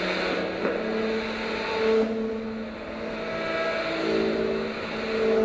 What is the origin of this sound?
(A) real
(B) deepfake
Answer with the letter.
A